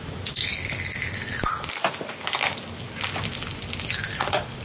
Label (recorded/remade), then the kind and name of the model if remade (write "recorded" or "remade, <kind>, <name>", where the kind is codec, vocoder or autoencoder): recorded